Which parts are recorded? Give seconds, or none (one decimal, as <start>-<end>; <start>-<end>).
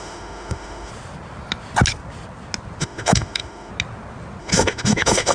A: 0.9-2.8; 3.7-4.4